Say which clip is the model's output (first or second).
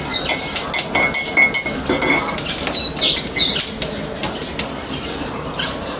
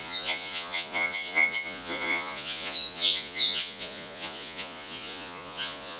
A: second